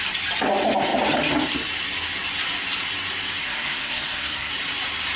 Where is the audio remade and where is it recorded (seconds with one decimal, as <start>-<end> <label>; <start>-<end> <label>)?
0.0-3.4 recorded; 3.4-4.5 remade; 4.5-5.2 recorded